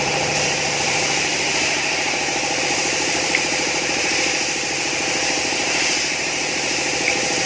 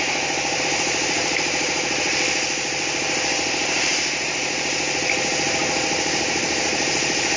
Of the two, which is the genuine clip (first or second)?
second